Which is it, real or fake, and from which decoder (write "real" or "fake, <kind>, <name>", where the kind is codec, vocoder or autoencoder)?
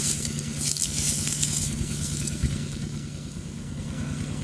fake, codec, SNAC